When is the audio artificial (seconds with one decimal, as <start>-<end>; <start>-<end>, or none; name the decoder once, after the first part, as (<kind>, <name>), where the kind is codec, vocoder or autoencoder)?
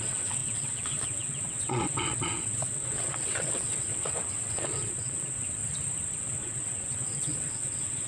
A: 0.0-5.6 (vocoder, WaveNeXt); 6.2-8.1